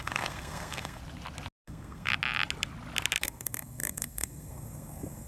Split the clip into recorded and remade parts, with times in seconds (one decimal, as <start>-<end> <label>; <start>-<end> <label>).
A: 0.0-1.0 remade; 1.0-1.6 recorded; 1.6-2.1 remade; 2.1-3.2 recorded; 3.2-5.3 remade